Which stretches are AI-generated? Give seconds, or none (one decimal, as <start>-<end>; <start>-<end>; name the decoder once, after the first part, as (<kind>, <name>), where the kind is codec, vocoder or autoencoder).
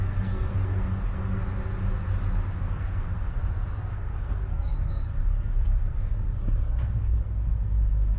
0.0-1.4 (codec, SNAC); 2.6-3.4; 3.9-8.2